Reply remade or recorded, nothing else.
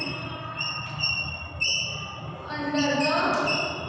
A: recorded